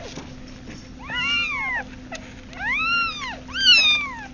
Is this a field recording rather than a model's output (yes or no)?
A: yes